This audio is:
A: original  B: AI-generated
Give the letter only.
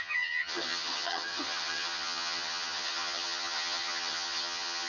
B